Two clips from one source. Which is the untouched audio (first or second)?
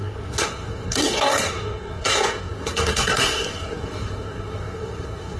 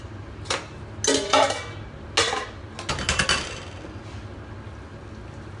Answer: second